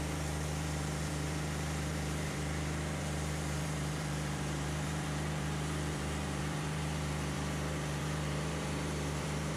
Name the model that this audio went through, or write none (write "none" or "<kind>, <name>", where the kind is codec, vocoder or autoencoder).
vocoder, BigVGAN v2